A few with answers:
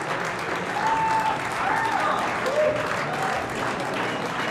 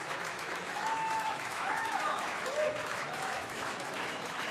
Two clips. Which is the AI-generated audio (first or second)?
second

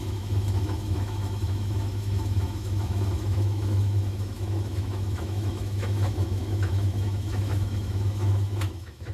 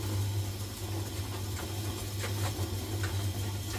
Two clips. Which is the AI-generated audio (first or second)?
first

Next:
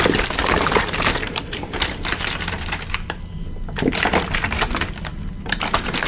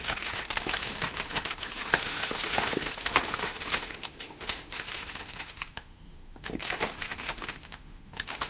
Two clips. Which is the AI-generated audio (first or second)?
second